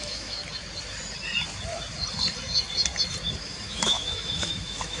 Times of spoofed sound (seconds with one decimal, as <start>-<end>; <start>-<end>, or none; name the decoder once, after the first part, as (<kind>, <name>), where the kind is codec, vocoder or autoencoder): 0.0-0.4 (autoencoder, DAC-VAE); 3.4-5.0